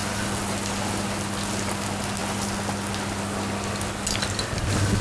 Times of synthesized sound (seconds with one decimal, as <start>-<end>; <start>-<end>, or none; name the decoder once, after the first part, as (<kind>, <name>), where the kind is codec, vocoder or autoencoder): none